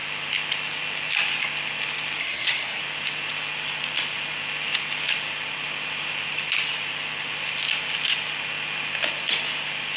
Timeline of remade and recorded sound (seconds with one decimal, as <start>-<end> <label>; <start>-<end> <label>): 0.0-2.2 recorded; 2.2-2.8 remade; 2.8-10.0 recorded